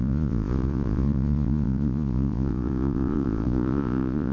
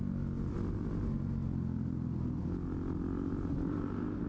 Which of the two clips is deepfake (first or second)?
first